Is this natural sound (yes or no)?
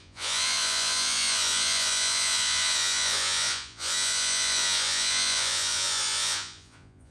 no